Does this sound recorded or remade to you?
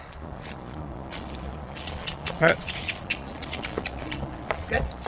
remade